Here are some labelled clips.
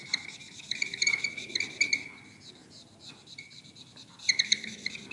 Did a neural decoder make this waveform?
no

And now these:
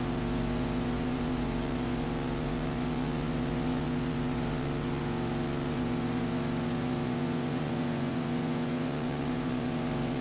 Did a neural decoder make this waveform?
yes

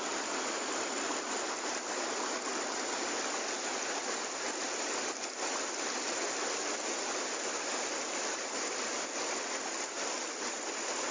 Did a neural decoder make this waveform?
no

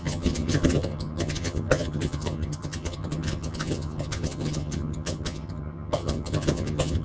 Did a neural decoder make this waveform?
yes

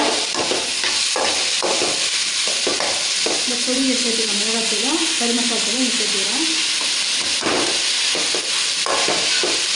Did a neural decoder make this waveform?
no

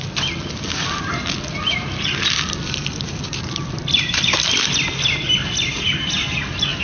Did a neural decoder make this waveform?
no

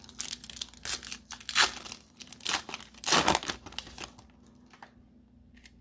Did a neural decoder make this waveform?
no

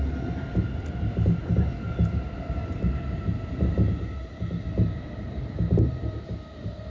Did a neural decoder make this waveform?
no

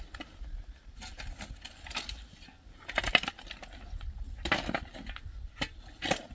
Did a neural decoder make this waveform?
no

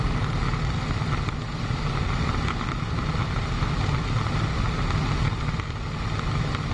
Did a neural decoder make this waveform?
no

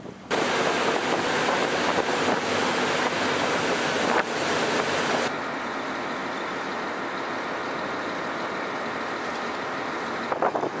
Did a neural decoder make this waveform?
no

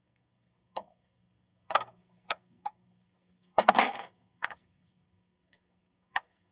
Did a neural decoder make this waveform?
yes